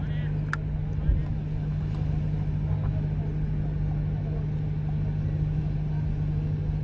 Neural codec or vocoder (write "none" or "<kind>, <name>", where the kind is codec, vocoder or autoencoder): none